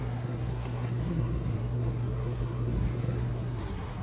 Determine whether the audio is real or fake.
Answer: fake